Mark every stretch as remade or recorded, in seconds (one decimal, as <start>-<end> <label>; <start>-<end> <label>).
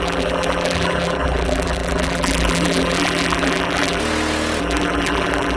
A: 0.0-4.0 remade; 4.0-4.6 recorded; 4.6-5.6 remade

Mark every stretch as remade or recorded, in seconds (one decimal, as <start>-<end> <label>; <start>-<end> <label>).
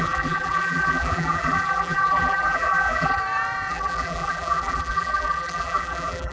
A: 0.0-3.2 remade; 3.2-3.7 recorded; 3.7-6.3 remade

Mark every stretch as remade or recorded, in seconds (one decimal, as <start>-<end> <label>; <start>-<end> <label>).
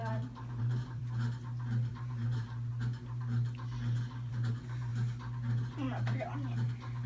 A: 0.0-0.6 recorded; 0.6-1.0 remade; 1.0-1.9 recorded; 1.9-2.7 remade; 2.7-4.3 recorded; 4.3-4.9 remade; 4.9-7.1 recorded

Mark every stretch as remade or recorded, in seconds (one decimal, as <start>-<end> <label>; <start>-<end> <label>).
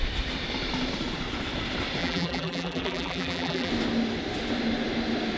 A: 0.0-2.0 recorded; 2.0-3.7 remade; 3.7-5.4 recorded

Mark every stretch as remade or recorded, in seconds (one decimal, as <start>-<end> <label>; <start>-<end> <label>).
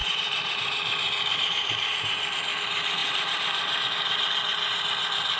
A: 0.0-2.4 remade; 2.4-3.0 recorded; 3.0-3.8 remade; 3.8-5.4 recorded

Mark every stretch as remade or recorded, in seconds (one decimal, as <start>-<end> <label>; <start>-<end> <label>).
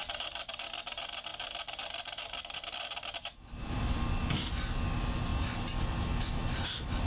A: 0.0-0.7 remade; 0.7-1.3 recorded; 1.3-4.1 remade; 4.1-7.1 recorded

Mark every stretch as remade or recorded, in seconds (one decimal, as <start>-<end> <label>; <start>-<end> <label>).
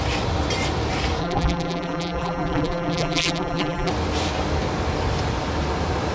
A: 0.0-1.2 recorded; 1.2-3.9 remade; 3.9-6.1 recorded